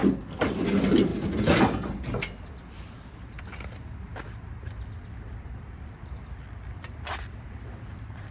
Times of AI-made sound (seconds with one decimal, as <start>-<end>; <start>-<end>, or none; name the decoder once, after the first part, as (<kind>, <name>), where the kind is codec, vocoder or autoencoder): 0.6-1.1 (vocoder, BigVGAN v2); 2.7-8.3